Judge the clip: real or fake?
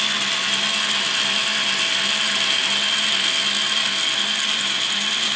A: real